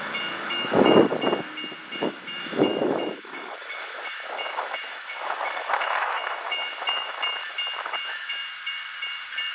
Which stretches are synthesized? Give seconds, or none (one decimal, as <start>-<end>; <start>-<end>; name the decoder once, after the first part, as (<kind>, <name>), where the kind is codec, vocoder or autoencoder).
0.0-1.1 (autoencoder, DAC-VAE); 1.9-8.4